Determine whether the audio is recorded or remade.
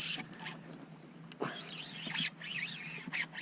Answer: recorded